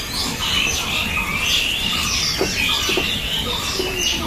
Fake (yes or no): no